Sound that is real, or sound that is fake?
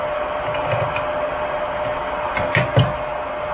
real